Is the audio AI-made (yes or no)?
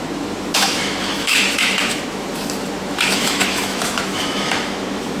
yes